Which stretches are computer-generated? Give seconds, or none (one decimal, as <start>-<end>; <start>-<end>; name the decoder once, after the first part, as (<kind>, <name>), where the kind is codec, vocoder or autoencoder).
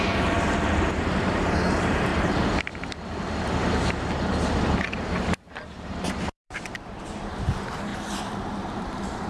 0.0-2.1 (vocoder, BigVGAN v2); 4.6-7.9; 8.5-9.3